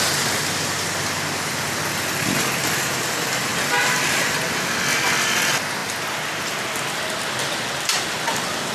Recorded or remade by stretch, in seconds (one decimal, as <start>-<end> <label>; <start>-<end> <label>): 0.0-8.7 recorded